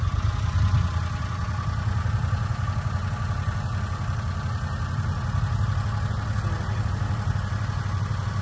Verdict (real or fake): real